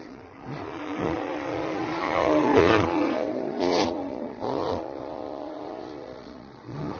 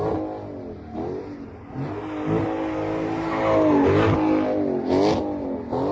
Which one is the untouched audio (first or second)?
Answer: second